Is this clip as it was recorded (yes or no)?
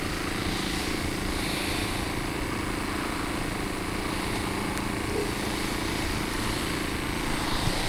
yes